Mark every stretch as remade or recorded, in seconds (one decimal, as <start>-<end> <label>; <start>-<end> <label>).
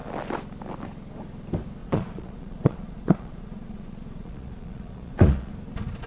0.0-1.8 recorded; 1.8-5.5 remade; 5.5-6.1 recorded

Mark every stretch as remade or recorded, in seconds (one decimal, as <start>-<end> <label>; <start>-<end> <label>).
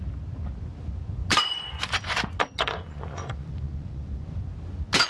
0.0-1.2 recorded; 1.2-4.3 remade; 4.3-5.1 recorded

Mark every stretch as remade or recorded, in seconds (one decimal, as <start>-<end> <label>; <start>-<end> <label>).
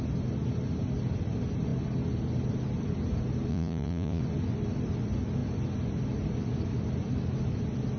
0.0-3.5 recorded; 3.5-4.2 remade; 4.2-8.0 recorded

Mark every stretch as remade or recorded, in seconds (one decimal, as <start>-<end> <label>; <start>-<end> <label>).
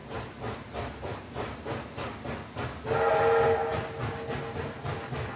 0.0-5.4 recorded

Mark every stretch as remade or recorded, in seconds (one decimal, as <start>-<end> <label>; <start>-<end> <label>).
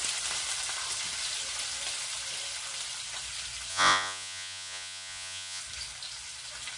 0.0-3.7 recorded; 3.7-5.6 remade; 5.6-6.8 recorded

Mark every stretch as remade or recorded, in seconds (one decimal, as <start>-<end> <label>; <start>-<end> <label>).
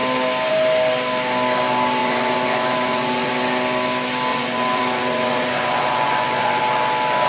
0.0-2.0 recorded; 2.0-3.3 remade; 3.3-4.3 recorded; 4.3-6.6 remade; 6.6-7.3 recorded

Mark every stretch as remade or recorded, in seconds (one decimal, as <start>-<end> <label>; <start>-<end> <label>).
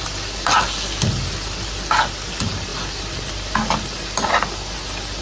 0.0-5.2 recorded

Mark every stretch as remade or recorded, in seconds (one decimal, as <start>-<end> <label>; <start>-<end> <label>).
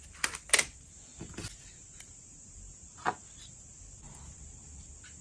0.0-5.2 recorded